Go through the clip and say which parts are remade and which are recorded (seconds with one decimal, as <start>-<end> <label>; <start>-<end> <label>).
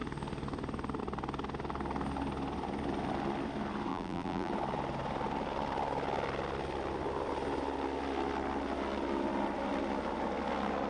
0.0-3.9 recorded; 3.9-4.5 remade; 4.5-10.9 recorded